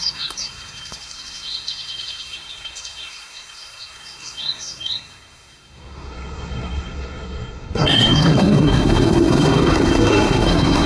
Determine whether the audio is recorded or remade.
remade